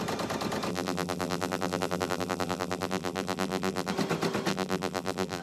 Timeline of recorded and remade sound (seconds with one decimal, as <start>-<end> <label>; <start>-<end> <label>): 0.0-0.7 recorded; 0.7-3.9 remade; 3.9-4.5 recorded; 4.5-5.4 remade